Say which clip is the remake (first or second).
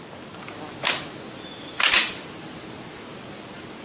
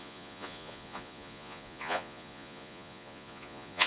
second